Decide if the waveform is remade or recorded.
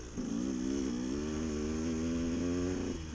recorded